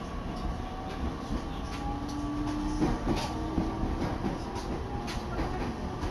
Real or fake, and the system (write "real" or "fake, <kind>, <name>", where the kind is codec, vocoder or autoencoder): real